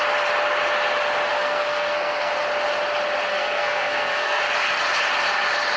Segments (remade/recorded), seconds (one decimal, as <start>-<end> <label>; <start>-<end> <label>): 0.0-1.3 recorded; 1.3-2.3 remade; 2.3-3.3 recorded; 3.3-4.4 remade; 4.4-5.8 recorded